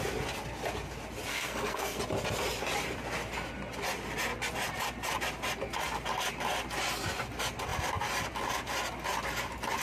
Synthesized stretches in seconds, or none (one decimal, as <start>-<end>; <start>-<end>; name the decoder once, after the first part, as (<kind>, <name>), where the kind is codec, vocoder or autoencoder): 1.3-2.0 (codec, SNAC)